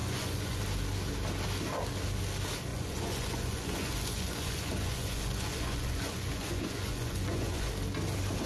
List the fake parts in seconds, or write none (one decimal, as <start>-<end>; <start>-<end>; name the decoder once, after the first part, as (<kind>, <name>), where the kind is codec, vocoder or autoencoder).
0.0-0.6 (vocoder, Vocos); 2.7-7.7

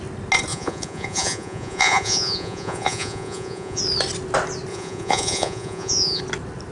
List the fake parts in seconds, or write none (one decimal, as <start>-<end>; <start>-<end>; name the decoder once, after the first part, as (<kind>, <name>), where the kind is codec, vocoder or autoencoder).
0.5-3.8 (vocoder, Vocos); 4.7-6.2

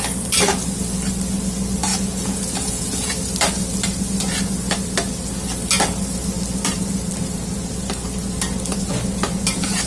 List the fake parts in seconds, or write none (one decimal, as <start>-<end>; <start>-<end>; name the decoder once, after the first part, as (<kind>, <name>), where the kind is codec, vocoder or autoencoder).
1.9-3.1 (vocoder, Vocos)